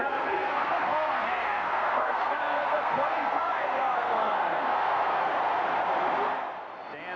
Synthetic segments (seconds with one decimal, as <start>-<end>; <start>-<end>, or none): 0.0-5.3